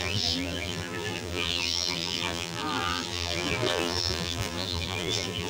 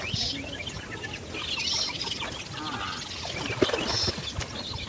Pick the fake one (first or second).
first